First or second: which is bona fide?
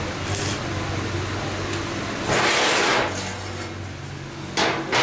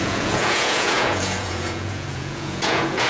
first